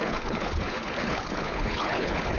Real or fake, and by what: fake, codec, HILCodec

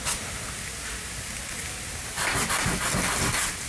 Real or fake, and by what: real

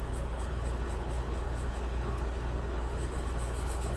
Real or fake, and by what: fake, codec, HILCodec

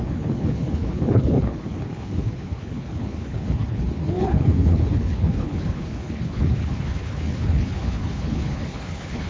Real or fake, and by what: fake, codec, HILCodec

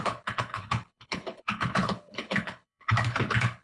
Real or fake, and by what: fake, codec, HILCodec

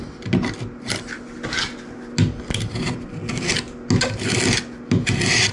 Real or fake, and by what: real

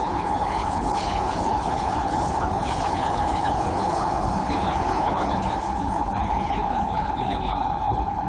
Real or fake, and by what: fake, codec, HILCodec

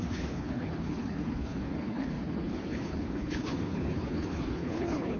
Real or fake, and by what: fake, codec, HILCodec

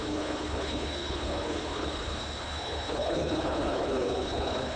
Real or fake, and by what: fake, codec, HILCodec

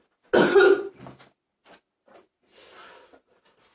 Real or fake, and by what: real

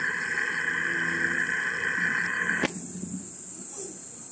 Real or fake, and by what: real